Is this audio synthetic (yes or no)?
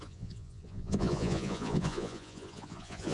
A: yes